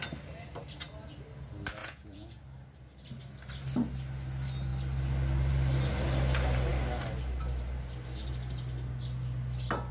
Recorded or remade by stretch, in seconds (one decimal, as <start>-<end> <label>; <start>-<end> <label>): 0.0-1.8 recorded; 1.8-2.4 remade; 2.4-9.9 recorded